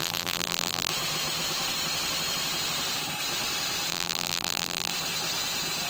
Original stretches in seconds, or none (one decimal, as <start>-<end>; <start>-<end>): 0.9-3.9; 4.9-5.9